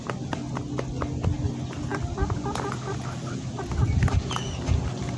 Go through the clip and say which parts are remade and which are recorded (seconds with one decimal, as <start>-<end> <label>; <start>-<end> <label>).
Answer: 0.0-5.2 recorded